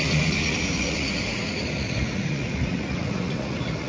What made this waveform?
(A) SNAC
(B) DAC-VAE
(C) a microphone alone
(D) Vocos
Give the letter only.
D